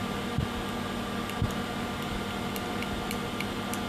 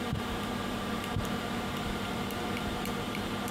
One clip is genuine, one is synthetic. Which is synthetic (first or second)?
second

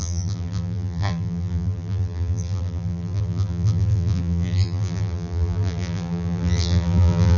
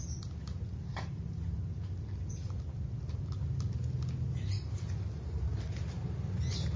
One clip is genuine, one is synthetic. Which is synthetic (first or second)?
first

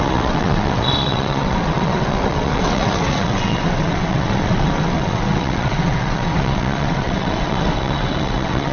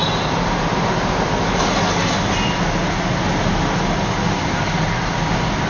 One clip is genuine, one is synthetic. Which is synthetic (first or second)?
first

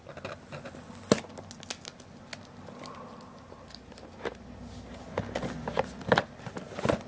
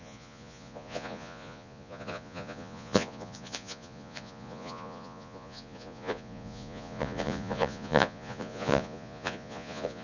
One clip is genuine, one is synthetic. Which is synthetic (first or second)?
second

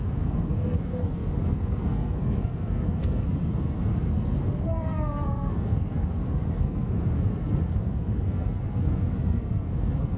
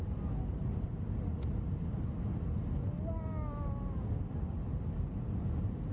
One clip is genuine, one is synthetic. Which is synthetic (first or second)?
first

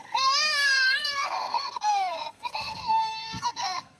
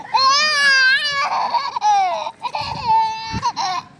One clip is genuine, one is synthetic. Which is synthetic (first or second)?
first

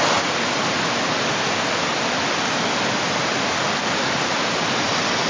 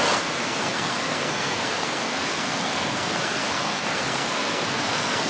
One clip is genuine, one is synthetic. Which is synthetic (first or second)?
second